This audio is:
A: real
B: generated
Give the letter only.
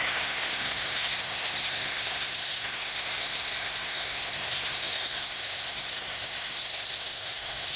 B